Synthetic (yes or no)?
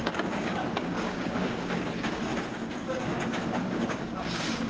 yes